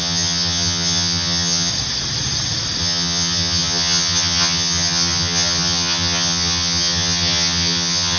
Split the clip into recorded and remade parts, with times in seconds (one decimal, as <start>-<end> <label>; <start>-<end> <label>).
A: 0.0-1.7 remade; 1.7-2.8 recorded; 2.8-8.2 remade